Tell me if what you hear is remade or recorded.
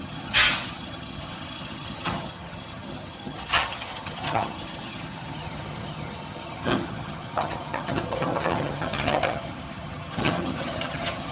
remade